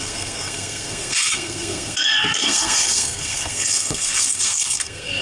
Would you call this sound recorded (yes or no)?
no